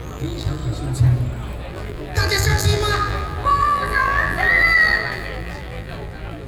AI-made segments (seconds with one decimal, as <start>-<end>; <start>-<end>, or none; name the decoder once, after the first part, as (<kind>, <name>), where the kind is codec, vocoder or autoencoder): 0.0-0.6 (vocoder, BigVGAN v2); 1.7-6.5